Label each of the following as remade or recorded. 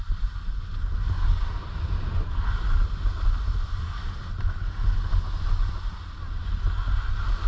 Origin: recorded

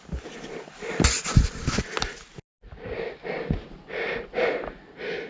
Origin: recorded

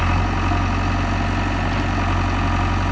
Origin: recorded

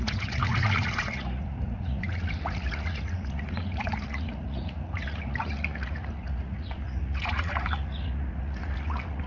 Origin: remade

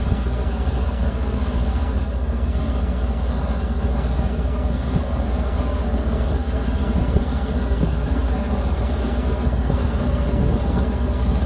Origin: remade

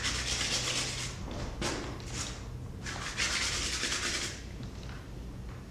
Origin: recorded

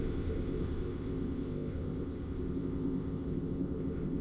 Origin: remade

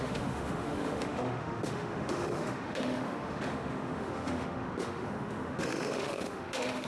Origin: remade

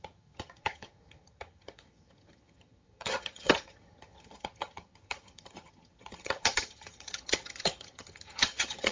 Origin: remade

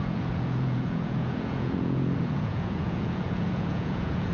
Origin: remade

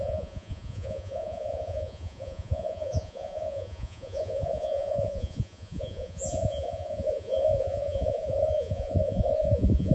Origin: remade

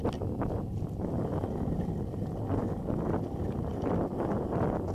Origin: recorded